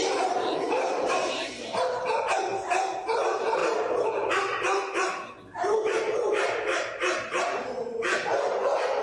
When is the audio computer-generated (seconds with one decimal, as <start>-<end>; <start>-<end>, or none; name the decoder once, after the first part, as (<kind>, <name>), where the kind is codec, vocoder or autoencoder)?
0.0-9.0 (vocoder, BigVGAN v2)